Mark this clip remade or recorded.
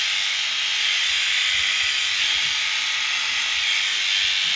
recorded